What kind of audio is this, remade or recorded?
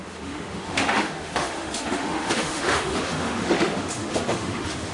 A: remade